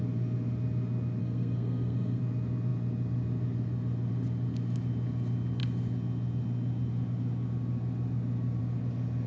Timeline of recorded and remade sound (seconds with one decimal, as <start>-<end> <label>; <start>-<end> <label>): 0.0-1.2 recorded; 1.2-2.2 remade; 2.2-9.3 recorded